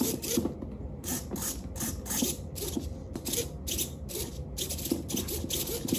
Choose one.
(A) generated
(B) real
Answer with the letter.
B